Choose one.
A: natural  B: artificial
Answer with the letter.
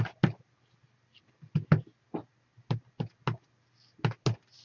A